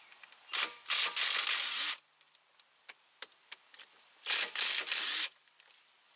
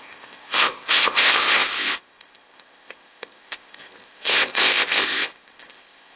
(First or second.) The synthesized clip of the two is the second